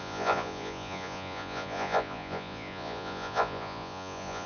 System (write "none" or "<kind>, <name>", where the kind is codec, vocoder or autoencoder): vocoder, Vocos